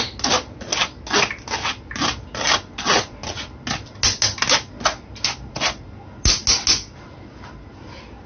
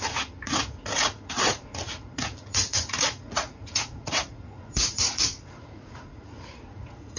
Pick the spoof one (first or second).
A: second